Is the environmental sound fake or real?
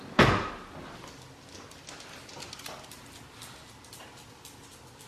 real